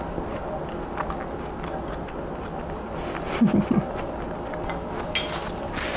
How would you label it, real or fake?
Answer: real